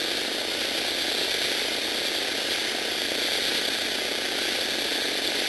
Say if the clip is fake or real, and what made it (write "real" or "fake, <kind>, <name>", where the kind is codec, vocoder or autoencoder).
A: real